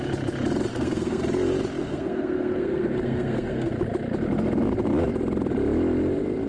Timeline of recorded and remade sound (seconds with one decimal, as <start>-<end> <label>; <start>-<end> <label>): 0.0-0.7 recorded; 0.7-1.2 remade; 1.2-1.8 recorded; 1.8-3.7 remade; 3.7-6.5 recorded